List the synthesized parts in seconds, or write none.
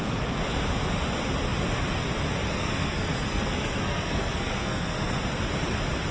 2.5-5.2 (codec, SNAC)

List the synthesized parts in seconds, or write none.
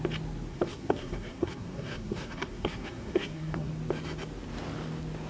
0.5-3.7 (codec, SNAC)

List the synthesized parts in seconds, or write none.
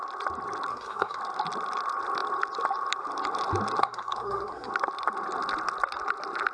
0.7-1.2 (codec, SNAC); 3.8-4.7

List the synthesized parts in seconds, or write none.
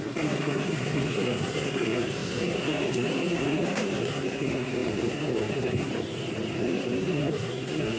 0.0-5.9 (codec, SNAC); 6.6-8.0